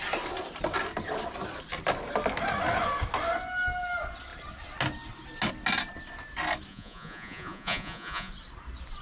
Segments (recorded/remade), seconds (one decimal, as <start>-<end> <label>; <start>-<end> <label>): 0.0-6.7 recorded; 6.7-8.3 remade; 8.3-9.0 recorded